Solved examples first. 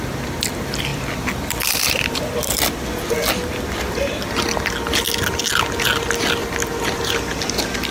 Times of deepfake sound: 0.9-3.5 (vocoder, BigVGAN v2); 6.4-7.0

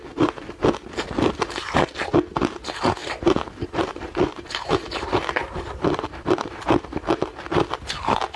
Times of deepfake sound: 3.0-6.9 (vocoder, BigVGAN v2)

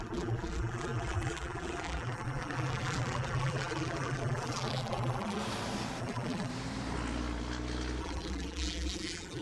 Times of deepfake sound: 0.0-5.4 (vocoder, BigVGAN v2); 6.0-6.5; 8.0-9.4

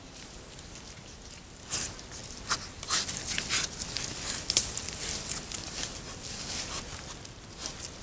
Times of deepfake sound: none

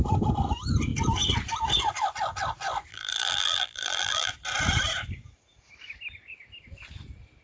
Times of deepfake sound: 2.9-4.3 (vocoder, BigVGAN v2)

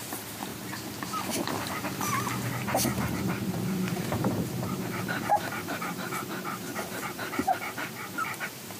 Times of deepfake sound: 0.5-1.8 (vocoder, BigVGAN v2); 2.9-7.9